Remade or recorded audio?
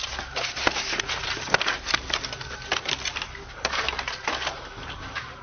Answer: remade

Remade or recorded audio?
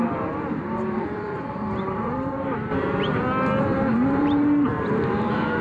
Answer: remade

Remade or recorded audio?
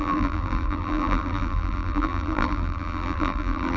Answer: remade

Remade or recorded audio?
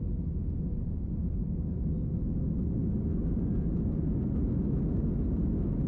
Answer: recorded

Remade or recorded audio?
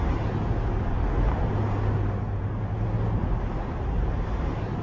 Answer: recorded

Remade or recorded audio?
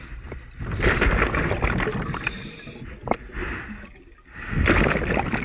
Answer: recorded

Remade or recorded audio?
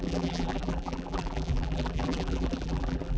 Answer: remade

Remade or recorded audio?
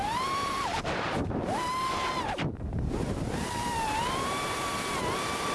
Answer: remade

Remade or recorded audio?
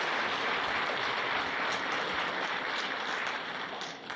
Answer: remade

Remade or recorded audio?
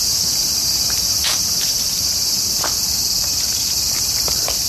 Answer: remade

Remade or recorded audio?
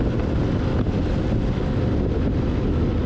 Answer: recorded